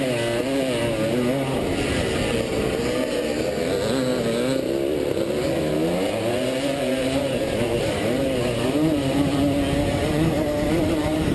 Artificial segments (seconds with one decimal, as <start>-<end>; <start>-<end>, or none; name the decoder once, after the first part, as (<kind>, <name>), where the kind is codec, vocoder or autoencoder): 7.0-9.4 (vocoder, BigVGAN v2); 9.9-11.3